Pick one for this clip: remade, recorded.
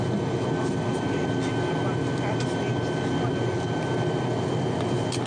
recorded